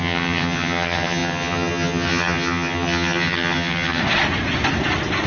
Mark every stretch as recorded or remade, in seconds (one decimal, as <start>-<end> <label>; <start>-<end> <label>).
0.0-4.0 remade; 4.0-5.3 recorded